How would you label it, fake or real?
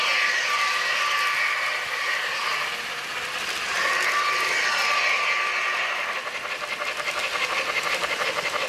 real